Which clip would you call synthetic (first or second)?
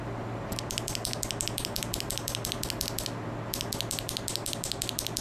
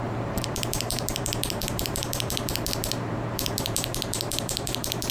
second